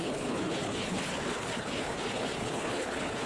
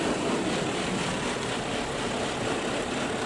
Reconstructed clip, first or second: first